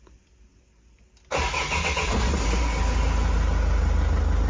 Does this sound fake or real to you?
real